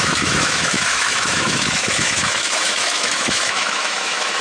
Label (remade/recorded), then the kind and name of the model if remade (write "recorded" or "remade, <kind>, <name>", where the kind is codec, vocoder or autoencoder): remade, autoencoder, DAC-VAE